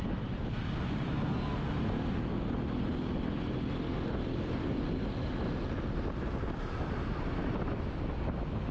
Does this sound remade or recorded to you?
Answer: recorded